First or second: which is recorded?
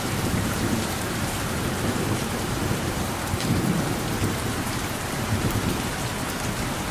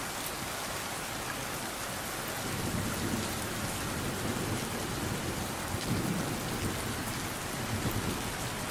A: second